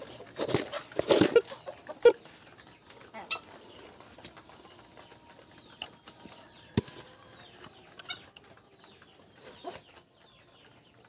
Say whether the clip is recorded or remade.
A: recorded